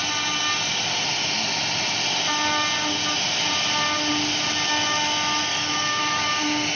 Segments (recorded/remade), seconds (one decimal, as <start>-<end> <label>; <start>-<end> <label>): 0.0-5.5 recorded; 5.5-6.3 remade; 6.3-6.8 recorded